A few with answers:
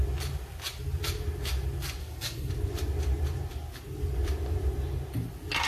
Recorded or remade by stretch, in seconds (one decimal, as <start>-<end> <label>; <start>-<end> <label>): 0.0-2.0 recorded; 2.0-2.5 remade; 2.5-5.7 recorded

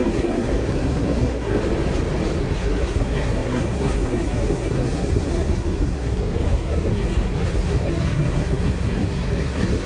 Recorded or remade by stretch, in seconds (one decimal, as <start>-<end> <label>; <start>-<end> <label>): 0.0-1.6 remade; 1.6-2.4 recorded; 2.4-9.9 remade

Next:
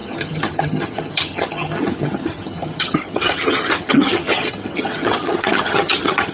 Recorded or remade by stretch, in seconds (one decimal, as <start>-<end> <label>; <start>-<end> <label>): 0.0-6.3 remade

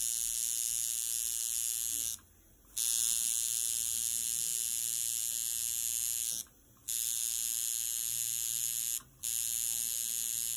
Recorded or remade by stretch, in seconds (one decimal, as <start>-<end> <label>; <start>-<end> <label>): 0.0-10.6 recorded

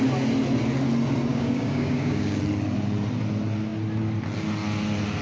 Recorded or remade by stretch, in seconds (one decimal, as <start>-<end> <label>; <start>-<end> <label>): 0.0-1.3 recorded; 1.3-2.4 remade; 2.4-5.2 recorded

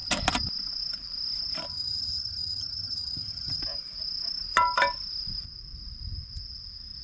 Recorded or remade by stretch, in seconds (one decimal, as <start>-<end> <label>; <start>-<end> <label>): 0.0-1.7 recorded; 1.7-3.6 remade; 3.6-7.0 recorded

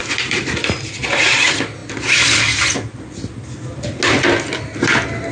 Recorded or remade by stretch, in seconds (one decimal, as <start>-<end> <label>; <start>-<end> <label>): 0.0-5.3 recorded

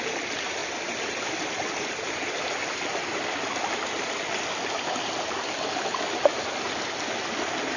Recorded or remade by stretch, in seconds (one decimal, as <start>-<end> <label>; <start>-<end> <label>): 0.0-7.8 recorded